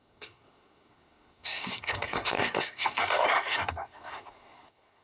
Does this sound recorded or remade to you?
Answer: remade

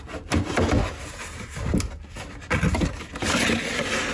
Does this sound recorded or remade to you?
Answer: recorded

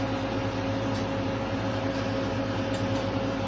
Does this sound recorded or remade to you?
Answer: recorded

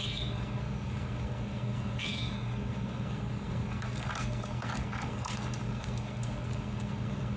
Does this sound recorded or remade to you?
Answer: remade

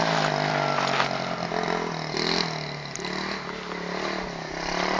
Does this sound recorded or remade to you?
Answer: recorded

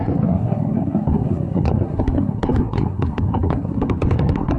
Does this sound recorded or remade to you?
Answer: remade